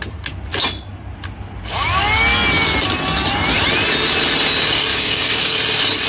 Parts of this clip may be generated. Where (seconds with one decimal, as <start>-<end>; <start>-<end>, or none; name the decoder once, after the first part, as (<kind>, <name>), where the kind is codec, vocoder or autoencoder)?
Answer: 4.9-5.5 (codec, DAC)